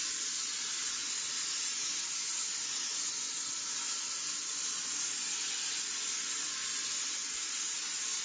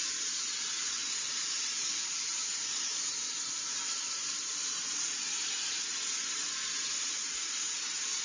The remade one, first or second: second